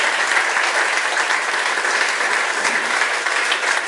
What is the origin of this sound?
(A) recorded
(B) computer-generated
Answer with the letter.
A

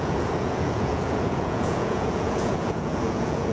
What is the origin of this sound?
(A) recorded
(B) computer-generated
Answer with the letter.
B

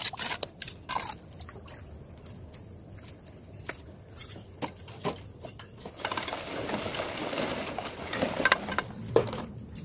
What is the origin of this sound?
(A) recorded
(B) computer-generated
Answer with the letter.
A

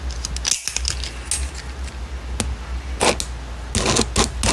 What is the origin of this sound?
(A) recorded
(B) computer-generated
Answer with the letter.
A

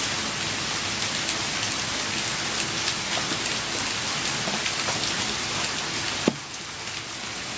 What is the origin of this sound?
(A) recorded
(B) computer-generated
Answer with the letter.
A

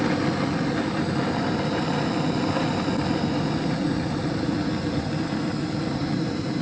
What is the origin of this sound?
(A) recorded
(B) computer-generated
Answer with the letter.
A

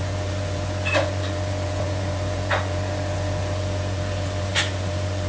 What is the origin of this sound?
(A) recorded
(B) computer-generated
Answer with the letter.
B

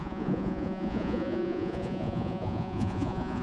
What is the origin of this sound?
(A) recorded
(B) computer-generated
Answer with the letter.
B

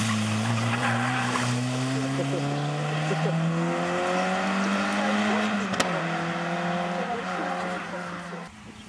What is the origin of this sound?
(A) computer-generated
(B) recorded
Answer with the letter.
B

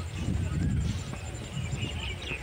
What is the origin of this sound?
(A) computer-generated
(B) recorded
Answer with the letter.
B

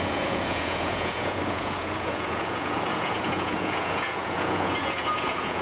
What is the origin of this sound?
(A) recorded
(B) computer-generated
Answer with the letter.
B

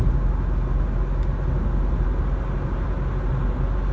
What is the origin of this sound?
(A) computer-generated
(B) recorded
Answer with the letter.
B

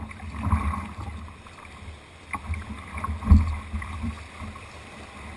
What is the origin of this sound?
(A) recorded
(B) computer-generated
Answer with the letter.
A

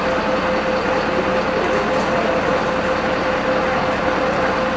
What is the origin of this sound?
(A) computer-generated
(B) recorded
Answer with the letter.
B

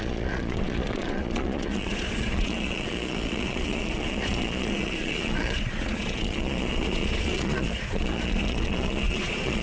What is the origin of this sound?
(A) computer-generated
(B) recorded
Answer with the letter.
A